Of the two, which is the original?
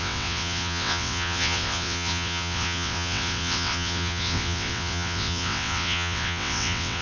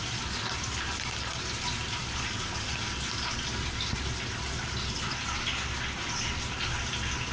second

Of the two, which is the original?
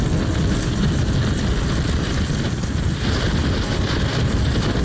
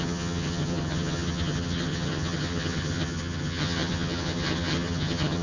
first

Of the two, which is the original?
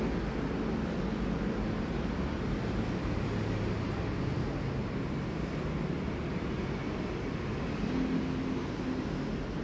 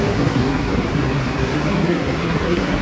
first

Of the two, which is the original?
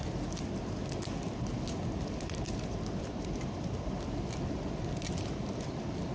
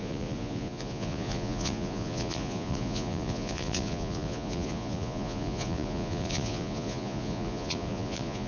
first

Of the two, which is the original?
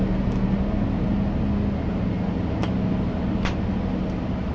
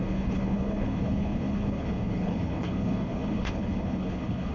first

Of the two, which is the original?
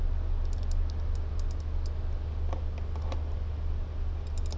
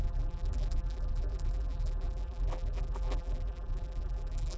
first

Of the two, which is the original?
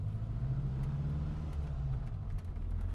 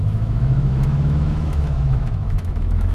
first